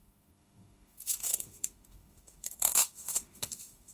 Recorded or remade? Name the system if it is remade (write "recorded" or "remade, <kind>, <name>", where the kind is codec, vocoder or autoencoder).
remade, autoencoder, DAC-VAE